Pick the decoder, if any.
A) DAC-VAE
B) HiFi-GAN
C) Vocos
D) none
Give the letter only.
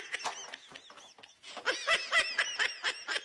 D